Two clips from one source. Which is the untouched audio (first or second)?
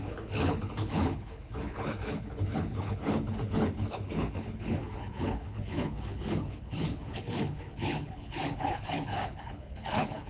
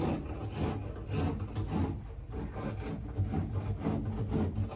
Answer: second